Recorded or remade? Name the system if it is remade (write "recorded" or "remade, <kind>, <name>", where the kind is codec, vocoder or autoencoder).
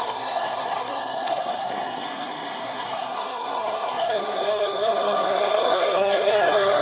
remade, codec, SNAC